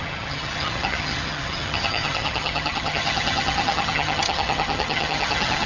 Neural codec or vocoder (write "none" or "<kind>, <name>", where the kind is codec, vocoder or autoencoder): vocoder, HiFi-GAN